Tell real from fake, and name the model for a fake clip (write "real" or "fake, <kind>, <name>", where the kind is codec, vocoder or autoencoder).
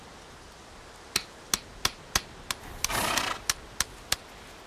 real